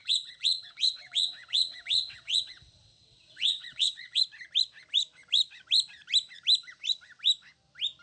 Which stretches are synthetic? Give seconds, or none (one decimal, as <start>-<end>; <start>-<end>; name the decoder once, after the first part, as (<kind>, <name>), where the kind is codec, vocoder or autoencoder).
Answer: 0.0-4.2 (vocoder, WaveNeXt)